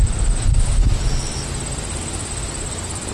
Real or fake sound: real